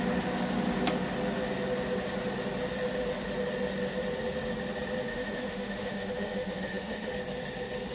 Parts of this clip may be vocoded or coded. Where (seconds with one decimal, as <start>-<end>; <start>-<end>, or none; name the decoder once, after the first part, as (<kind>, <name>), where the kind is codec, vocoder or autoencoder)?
5.1-7.1 (autoencoder, DAC-VAE)